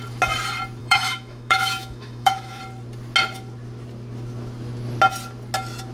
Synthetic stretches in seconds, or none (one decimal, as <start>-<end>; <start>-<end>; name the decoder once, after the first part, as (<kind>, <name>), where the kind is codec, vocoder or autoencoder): 0.8-2.6 (autoencoder, DAC-VAE)